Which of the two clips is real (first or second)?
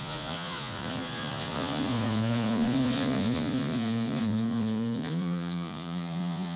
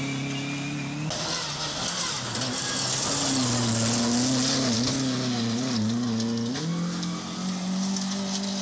second